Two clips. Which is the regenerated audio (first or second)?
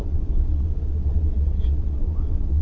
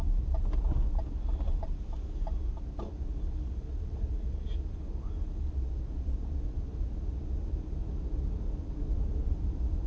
first